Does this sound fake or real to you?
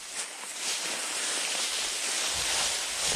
real